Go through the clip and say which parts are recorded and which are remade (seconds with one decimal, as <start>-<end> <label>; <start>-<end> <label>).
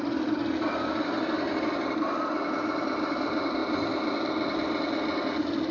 0.0-3.6 remade; 3.6-5.3 recorded; 5.3-5.7 remade